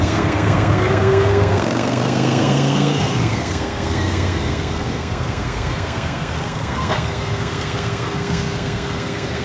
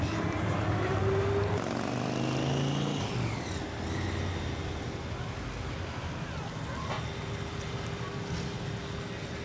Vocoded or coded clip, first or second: first